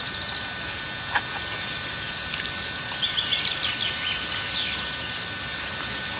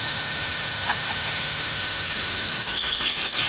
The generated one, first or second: second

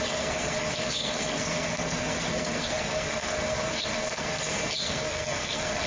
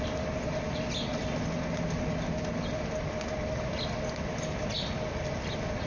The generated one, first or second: first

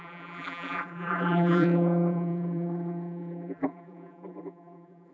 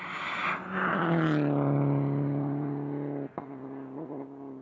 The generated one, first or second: first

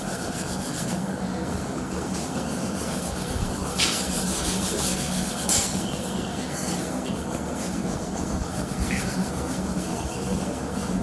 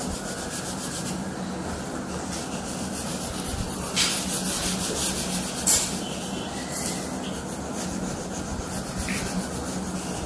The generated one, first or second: first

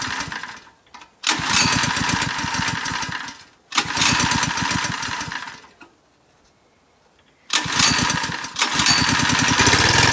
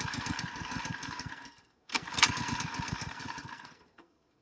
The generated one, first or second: second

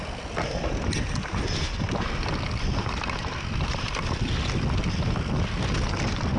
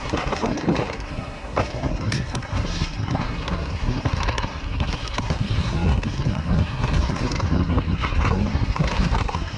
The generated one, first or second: second